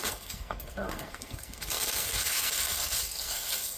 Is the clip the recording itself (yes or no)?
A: no